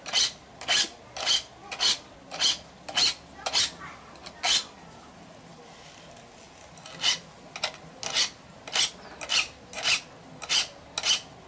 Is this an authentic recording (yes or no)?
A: yes